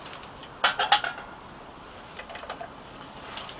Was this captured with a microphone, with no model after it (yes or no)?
yes